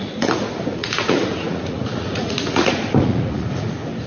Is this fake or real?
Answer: fake